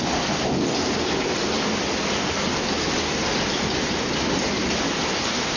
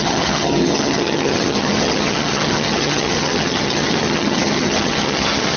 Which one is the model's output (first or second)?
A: second